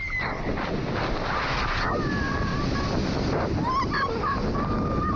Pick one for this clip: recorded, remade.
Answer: remade